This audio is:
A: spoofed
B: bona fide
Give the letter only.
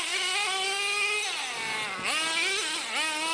B